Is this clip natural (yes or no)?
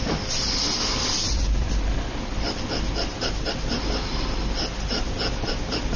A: yes